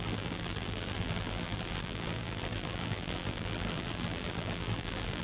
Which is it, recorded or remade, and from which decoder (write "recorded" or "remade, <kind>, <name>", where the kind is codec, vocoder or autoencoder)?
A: remade, vocoder, BigVGAN v2